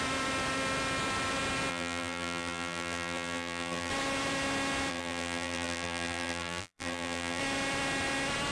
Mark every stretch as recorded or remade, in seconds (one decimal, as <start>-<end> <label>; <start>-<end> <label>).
0.0-1.7 recorded; 1.7-3.9 remade; 3.9-4.9 recorded; 4.9-7.4 remade; 7.4-8.5 recorded